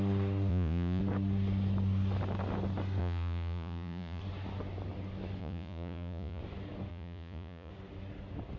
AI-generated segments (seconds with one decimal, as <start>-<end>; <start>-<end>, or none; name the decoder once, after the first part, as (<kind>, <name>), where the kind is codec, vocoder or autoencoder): 0.5-1.0 (vocoder, Vocos); 3.0-4.2; 5.4-6.4; 6.9-7.7